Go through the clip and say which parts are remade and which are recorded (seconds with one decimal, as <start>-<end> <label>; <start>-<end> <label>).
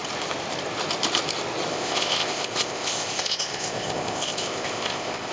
0.0-1.7 recorded; 1.7-5.3 remade